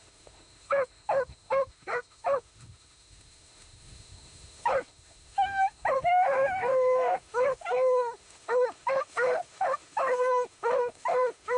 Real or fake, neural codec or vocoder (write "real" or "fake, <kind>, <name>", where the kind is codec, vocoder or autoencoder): fake, autoencoder, DAC-VAE